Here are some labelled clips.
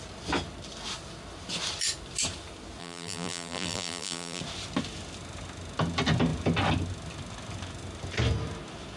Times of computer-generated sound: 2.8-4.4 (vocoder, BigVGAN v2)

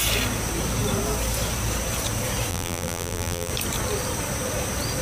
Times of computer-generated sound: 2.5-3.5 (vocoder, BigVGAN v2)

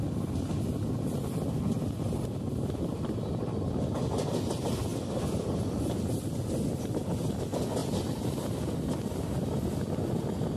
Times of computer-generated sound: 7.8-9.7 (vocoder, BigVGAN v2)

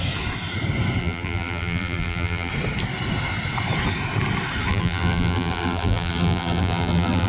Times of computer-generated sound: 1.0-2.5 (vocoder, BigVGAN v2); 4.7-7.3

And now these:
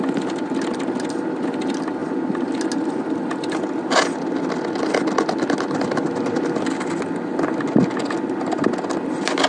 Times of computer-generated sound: none

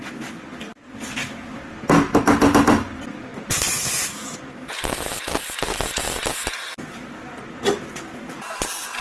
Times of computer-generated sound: 3.3-5.1 (vocoder, BigVGAN v2)